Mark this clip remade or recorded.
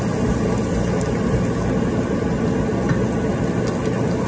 recorded